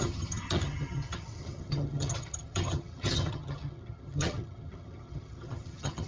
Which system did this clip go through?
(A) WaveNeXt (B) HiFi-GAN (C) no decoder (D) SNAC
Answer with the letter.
B